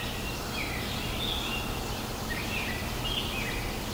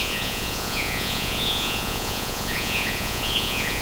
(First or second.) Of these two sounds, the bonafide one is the first